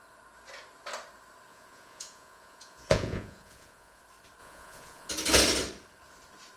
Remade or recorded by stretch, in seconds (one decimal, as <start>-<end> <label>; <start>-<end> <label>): 0.0-1.5 recorded; 1.5-4.0 remade; 4.0-4.4 recorded; 4.4-5.1 remade; 5.1-6.6 recorded

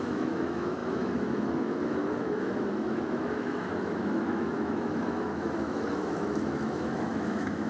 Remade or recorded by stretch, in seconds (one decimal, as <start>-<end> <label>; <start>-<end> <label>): 0.0-7.7 remade

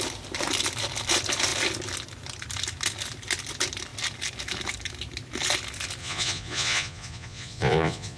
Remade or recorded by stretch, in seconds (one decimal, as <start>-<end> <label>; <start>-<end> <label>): 0.0-6.0 recorded; 6.0-8.2 remade

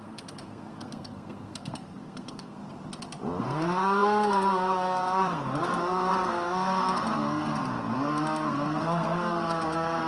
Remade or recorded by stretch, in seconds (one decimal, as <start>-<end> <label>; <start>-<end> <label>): 0.0-2.6 remade; 2.6-3.4 recorded; 3.4-10.1 remade

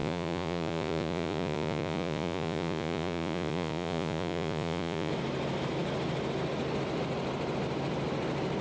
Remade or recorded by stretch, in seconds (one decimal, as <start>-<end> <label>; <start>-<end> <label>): 0.0-5.1 remade; 5.1-8.6 recorded

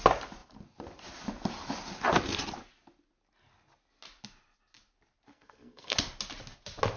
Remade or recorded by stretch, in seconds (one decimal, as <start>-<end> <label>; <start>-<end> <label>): 0.0-5.3 recorded; 5.3-6.0 remade; 6.0-7.0 recorded